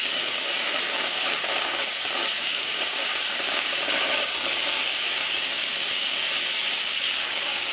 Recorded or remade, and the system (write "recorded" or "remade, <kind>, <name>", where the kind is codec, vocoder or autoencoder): remade, codec, DAC